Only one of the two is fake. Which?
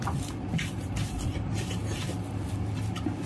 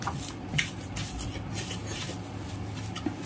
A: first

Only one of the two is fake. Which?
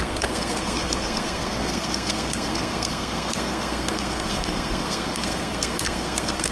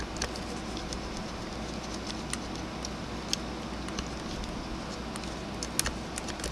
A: first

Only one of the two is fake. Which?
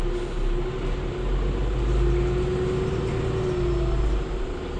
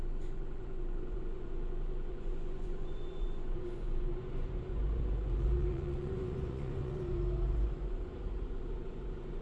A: second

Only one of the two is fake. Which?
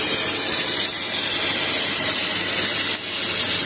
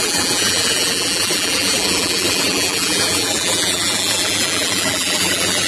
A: second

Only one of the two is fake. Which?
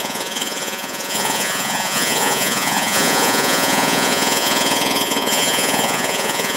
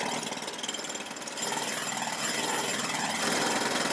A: first